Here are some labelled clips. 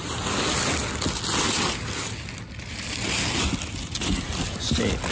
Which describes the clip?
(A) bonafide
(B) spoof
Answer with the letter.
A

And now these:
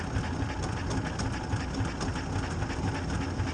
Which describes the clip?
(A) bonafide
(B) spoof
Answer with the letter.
A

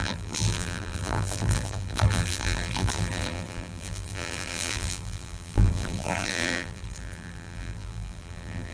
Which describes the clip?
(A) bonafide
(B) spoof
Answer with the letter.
B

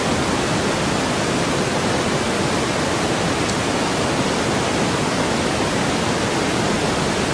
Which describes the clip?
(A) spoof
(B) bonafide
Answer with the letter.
B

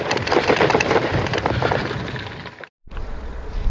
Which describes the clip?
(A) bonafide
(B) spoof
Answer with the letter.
A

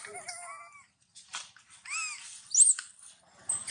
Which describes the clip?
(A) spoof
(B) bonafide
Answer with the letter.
B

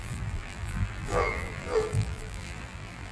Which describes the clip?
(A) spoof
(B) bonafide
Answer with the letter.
A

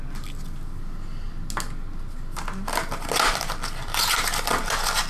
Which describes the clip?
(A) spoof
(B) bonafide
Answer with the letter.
B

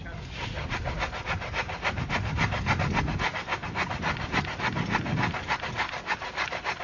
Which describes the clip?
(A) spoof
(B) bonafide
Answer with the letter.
B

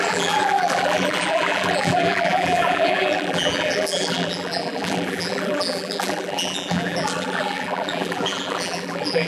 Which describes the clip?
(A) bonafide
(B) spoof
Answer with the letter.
B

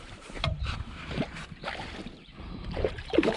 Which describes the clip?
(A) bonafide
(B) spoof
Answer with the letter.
B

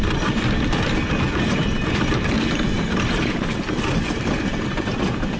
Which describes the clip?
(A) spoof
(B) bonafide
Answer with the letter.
A